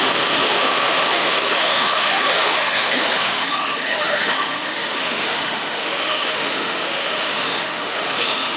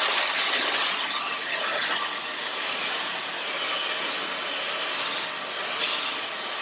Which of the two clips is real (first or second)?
second